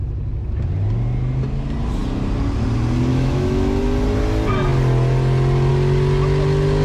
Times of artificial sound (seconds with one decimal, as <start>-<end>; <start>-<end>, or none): 3.1-3.8